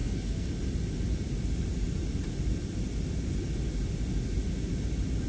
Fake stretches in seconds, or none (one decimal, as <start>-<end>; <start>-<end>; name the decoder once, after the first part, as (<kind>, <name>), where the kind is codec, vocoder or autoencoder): 0.0-0.5 (codec, SNAC)

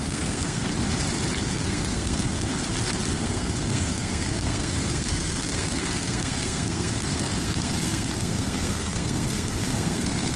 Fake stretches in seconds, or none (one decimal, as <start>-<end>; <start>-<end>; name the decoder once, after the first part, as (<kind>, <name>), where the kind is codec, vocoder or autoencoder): 0.0-0.7 (codec, SNAC); 1.4-2.5; 3.1-10.4

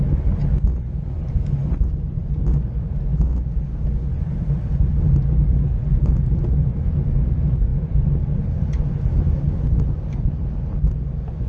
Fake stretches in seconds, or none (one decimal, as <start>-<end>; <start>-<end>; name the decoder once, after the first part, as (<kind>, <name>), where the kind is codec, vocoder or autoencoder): none

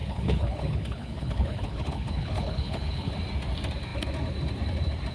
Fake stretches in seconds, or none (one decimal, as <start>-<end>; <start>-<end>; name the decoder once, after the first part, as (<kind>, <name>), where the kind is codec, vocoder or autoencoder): 0.0-3.1 (codec, HILCodec)

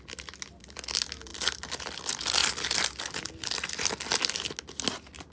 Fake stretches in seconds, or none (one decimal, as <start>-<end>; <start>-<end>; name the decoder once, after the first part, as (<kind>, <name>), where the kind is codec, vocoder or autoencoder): none